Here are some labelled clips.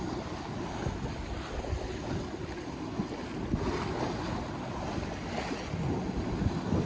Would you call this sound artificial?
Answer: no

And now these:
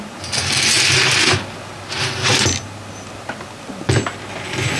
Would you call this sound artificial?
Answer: no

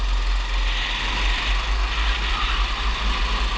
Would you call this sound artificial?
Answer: no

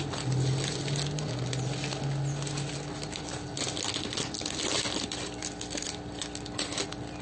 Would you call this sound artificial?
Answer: no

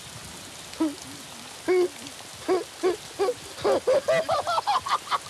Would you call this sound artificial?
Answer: no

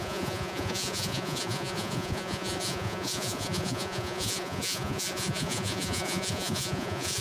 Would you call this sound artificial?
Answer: yes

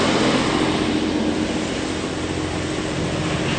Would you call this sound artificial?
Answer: no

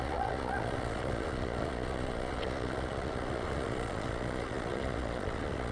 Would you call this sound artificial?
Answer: yes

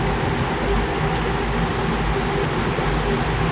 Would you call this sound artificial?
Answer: no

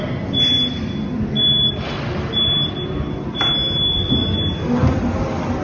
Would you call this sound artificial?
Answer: no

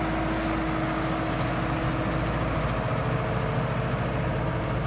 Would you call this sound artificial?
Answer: no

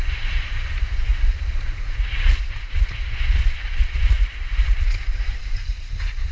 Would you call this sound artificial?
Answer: yes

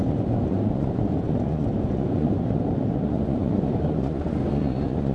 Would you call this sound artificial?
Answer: yes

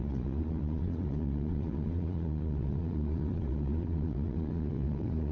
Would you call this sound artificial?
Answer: yes